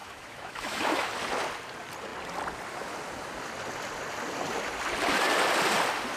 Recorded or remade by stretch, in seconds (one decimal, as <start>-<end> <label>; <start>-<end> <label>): 0.0-1.1 remade; 1.1-6.2 recorded